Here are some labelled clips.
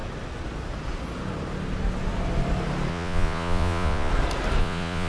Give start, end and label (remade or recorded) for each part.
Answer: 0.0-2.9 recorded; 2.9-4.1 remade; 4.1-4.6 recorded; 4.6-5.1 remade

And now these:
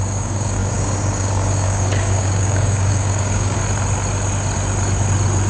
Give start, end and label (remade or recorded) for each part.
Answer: 0.0-3.6 remade; 3.6-5.5 recorded

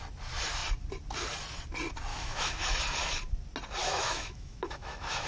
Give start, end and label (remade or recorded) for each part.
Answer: 0.0-2.1 recorded; 2.1-2.8 remade; 2.8-3.8 recorded; 3.8-5.3 remade